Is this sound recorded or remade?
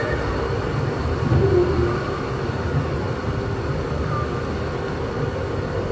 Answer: recorded